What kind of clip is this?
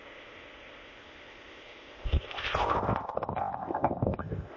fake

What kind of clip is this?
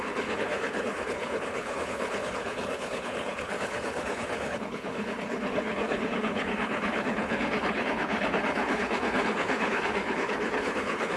fake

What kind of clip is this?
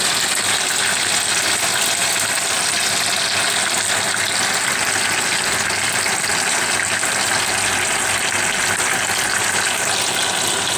real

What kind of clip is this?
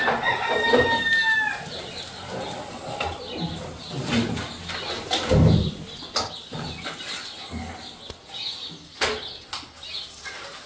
real